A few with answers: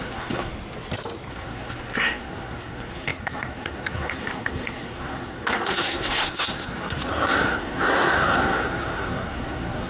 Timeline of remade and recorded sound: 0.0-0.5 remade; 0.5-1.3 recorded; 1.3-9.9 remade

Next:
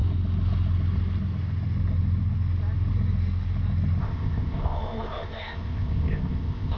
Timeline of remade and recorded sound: 0.0-4.0 recorded; 4.0-6.8 remade

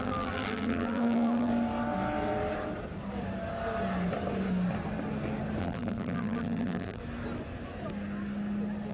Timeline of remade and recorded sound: 0.0-1.5 remade; 1.5-5.6 recorded; 5.6-7.0 remade; 7.0-8.9 recorded

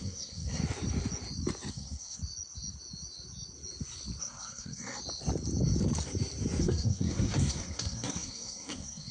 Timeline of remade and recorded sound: 0.0-0.6 remade; 0.6-1.7 recorded; 1.7-2.2 remade; 2.2-4.2 recorded; 4.2-5.0 remade; 5.0-6.6 recorded; 6.6-9.1 remade

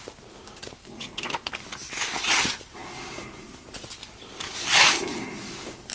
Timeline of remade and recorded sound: 0.0-0.8 recorded; 0.8-1.5 remade; 1.5-5.9 recorded

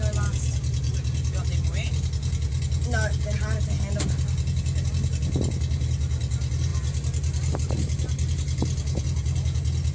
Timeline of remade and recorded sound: 0.0-9.9 recorded

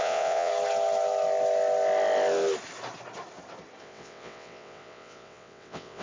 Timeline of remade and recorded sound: 0.0-0.5 remade; 0.5-3.8 recorded; 3.8-6.0 remade